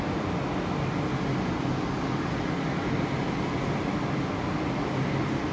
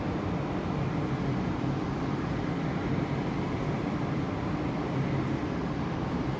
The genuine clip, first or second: first